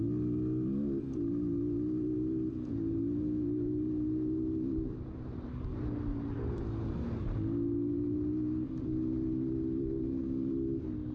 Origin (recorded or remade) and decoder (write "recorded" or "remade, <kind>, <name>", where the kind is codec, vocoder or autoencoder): recorded